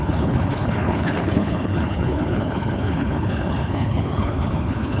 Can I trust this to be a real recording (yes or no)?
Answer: no